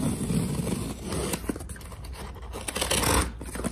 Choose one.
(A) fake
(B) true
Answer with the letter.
B